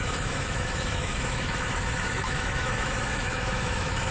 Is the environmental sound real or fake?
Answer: fake